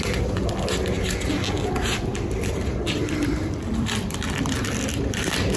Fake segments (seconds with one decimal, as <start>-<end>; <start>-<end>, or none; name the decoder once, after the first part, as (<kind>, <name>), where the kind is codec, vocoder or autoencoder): 2.1-5.6 (vocoder, BigVGAN v2)